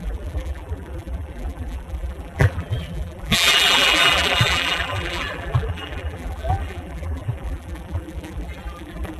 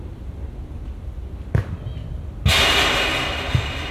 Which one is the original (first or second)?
second